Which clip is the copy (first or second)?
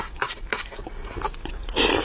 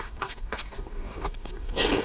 second